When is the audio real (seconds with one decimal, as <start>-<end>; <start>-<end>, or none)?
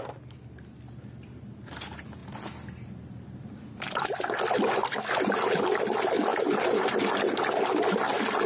0.0-6.3; 7.0-8.5